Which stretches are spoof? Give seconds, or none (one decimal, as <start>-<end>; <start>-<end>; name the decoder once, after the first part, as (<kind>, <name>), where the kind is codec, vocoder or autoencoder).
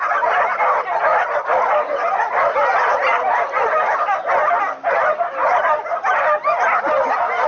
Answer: none